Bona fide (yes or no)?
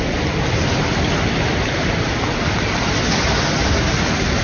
yes